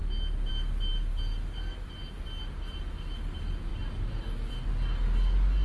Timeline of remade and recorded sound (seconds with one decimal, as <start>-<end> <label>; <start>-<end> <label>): 0.0-5.6 recorded